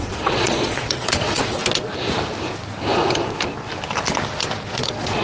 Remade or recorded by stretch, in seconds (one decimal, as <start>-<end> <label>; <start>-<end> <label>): 0.0-1.6 remade; 1.6-4.7 recorded; 4.7-5.2 remade